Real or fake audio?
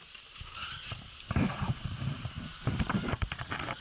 fake